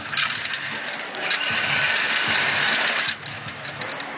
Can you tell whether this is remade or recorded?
recorded